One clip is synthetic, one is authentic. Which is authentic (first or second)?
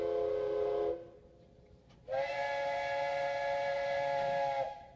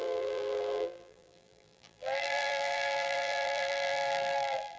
first